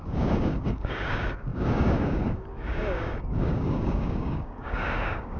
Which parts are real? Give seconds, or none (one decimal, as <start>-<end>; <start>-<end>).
none